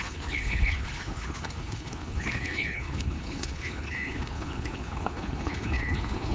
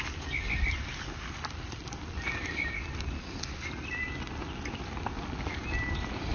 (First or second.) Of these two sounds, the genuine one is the second